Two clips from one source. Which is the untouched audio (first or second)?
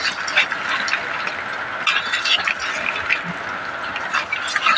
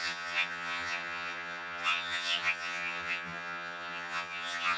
first